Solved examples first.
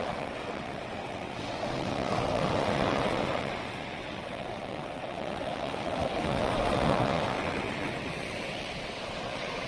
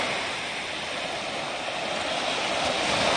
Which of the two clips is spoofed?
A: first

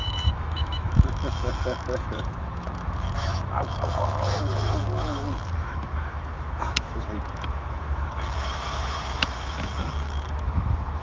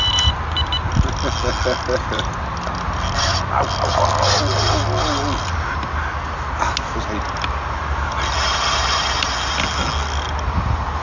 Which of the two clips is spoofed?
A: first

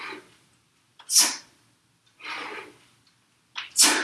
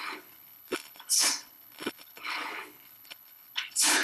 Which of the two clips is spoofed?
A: second